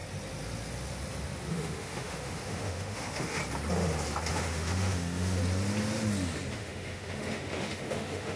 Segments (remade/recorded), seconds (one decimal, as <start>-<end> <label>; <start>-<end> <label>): 0.0-1.5 recorded; 1.5-3.4 remade; 3.4-4.3 recorded; 4.3-5.4 remade; 5.4-6.5 recorded; 6.5-8.4 remade